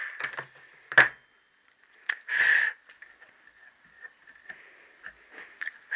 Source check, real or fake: real